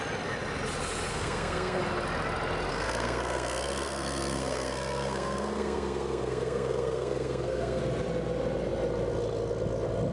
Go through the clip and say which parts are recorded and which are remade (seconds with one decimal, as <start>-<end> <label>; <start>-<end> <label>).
0.0-1.1 recorded; 1.1-1.8 remade; 1.8-2.7 recorded; 2.7-7.8 remade; 7.8-10.1 recorded